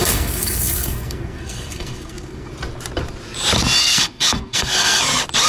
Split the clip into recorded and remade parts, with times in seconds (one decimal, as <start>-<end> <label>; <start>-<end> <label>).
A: 0.0-2.5 remade; 2.5-3.8 recorded; 3.8-5.0 remade; 5.0-5.5 recorded